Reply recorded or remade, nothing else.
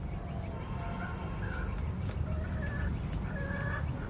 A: recorded